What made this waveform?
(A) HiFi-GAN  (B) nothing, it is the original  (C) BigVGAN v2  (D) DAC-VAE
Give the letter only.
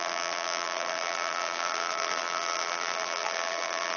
C